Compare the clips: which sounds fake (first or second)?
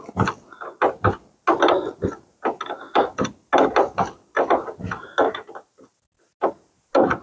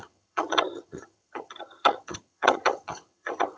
second